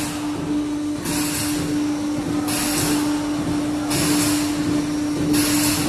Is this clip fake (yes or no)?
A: no